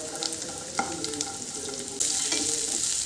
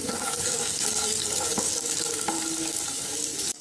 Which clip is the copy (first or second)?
second